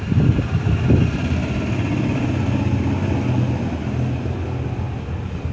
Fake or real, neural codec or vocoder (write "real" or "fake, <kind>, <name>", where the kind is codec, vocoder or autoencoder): real